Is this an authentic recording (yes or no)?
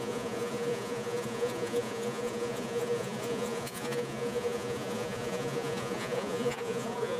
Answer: no